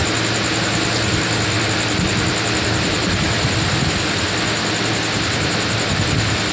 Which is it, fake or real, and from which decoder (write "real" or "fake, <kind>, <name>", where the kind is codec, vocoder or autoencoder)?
real